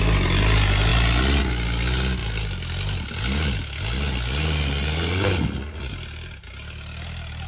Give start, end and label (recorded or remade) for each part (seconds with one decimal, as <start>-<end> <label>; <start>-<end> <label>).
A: 0.0-7.5 recorded